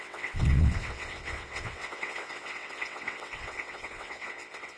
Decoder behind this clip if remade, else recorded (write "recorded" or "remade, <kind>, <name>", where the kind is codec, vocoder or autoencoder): remade, vocoder, WaveNeXt